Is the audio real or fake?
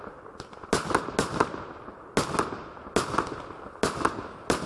real